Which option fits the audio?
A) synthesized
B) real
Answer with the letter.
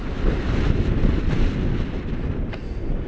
B